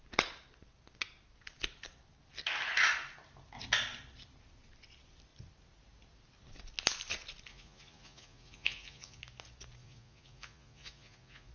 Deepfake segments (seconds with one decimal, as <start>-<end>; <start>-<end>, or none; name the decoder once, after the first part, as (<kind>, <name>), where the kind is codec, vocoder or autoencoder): 7.5-9.2 (vocoder, Vocos); 9.8-11.5